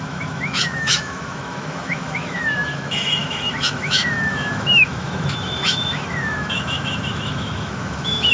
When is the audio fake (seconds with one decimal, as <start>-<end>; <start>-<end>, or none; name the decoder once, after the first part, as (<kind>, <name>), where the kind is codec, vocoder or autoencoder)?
0.0-8.3 (autoencoder, DAC-VAE)